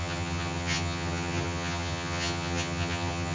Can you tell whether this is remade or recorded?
remade